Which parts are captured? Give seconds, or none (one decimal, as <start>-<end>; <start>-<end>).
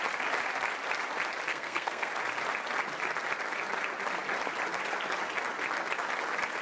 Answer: 0.0-1.5; 2.1-6.6